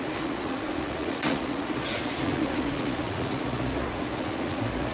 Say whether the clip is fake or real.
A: fake